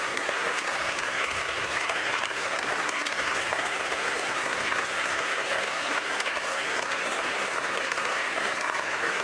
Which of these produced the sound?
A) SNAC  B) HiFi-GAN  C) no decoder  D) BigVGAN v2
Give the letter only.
A